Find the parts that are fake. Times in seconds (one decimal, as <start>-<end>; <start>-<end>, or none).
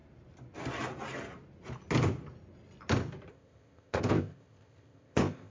3.3-5.5